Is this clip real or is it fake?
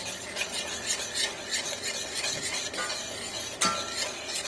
real